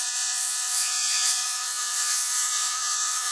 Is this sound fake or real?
fake